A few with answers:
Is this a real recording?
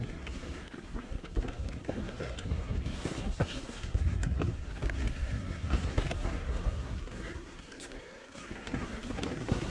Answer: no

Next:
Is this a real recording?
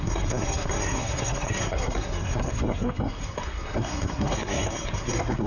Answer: no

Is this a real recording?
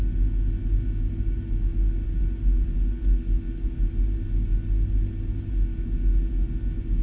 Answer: yes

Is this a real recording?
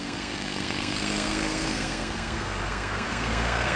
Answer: no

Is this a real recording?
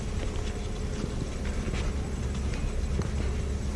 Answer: yes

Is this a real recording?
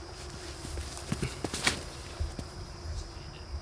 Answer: yes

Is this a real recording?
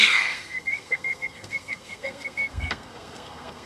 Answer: no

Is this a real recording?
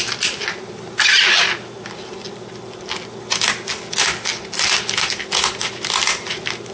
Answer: yes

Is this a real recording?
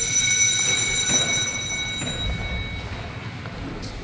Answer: yes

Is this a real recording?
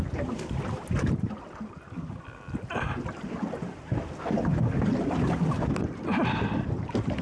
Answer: yes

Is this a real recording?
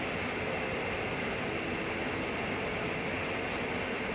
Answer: yes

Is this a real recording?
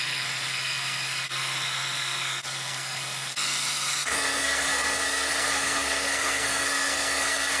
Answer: no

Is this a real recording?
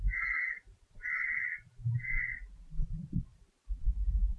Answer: yes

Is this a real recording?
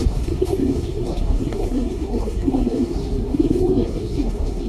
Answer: no